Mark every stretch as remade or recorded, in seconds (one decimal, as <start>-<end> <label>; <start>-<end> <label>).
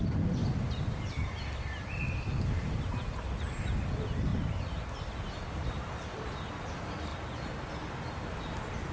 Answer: 0.0-4.3 recorded; 4.3-4.9 remade; 4.9-7.1 recorded; 7.1-7.7 remade; 7.7-8.9 recorded